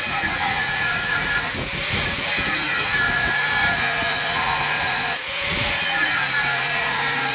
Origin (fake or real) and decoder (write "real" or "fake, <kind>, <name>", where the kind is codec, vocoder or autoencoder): fake, vocoder, Vocos